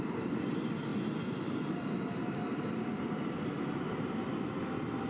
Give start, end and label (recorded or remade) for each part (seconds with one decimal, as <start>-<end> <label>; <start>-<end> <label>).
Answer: 0.0-5.1 recorded